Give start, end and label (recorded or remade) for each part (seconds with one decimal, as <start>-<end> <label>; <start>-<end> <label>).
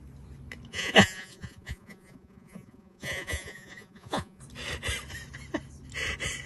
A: 0.0-0.7 recorded; 0.7-4.4 remade; 4.4-6.5 recorded